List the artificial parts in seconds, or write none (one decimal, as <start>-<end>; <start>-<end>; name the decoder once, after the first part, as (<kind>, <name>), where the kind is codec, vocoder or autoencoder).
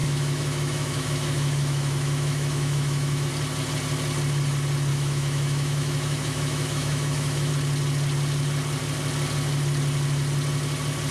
0.0-3.3 (autoencoder, DAC-VAE); 4.9-7.5